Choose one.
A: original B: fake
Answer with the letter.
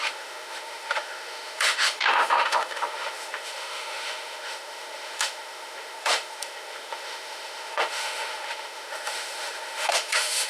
B